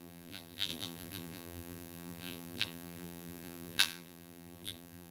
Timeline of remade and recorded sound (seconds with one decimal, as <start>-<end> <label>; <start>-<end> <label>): 0.0-5.1 remade